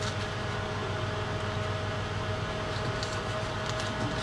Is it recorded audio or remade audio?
recorded